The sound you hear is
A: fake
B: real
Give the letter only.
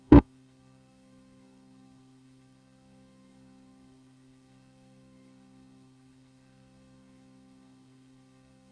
A